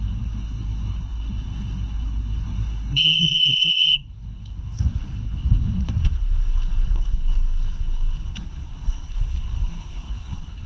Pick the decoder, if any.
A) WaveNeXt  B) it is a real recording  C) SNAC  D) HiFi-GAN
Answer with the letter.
C